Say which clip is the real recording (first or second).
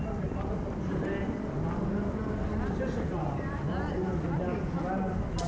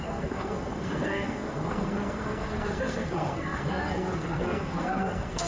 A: first